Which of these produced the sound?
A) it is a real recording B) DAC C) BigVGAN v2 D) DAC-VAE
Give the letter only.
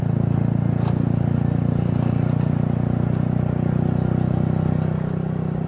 A